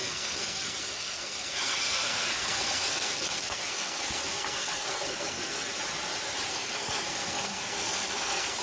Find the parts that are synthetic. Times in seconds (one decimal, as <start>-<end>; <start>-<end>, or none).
0.0-5.7; 6.5-8.6